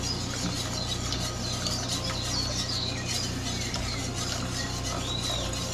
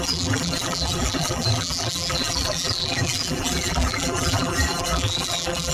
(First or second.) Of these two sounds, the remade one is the second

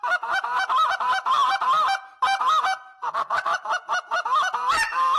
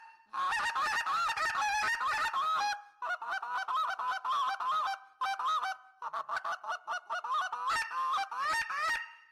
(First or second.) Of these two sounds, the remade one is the first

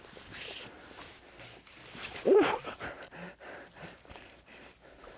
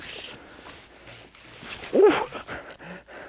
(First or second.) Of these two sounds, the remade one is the first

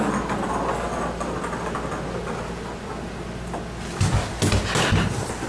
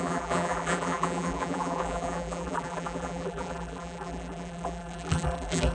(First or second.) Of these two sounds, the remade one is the second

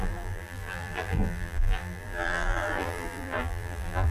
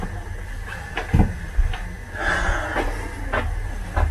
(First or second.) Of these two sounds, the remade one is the first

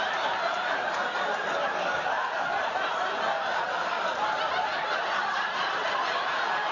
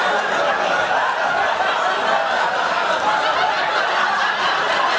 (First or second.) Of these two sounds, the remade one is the first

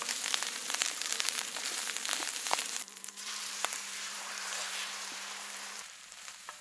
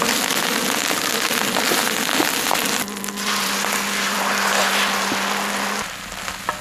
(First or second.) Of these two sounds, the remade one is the first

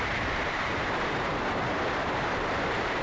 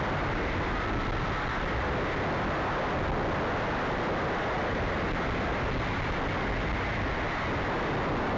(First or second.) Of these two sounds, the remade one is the first